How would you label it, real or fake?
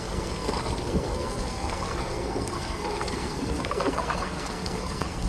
fake